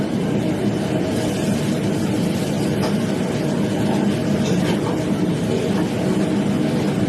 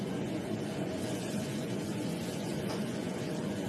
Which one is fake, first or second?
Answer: second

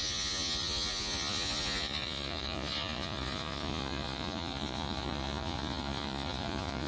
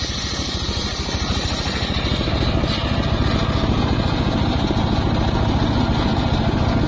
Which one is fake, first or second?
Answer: first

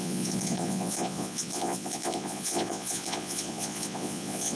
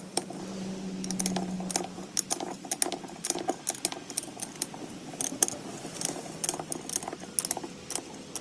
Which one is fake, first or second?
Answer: first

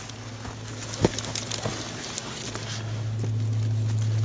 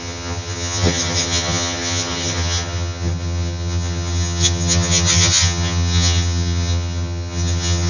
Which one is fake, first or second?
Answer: second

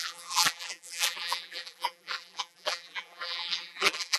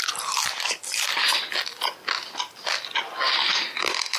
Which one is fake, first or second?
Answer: first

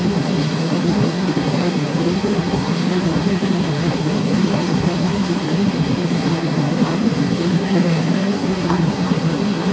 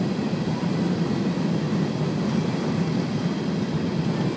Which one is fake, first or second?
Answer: first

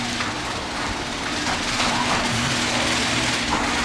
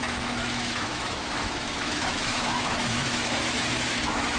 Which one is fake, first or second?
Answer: second